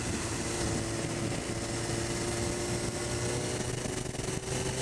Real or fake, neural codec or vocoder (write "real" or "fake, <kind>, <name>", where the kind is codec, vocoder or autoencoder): real